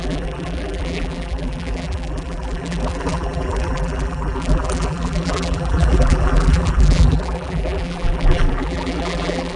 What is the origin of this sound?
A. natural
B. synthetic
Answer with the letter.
B